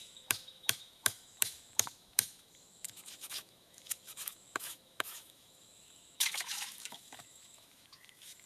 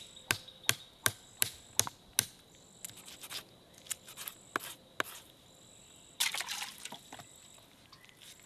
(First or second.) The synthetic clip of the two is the first